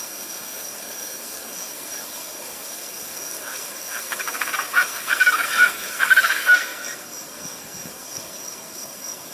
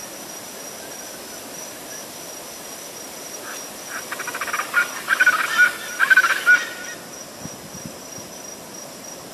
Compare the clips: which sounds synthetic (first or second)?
first